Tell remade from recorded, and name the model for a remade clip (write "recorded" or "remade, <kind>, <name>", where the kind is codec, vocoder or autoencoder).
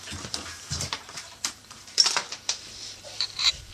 remade, vocoder, BigVGAN v2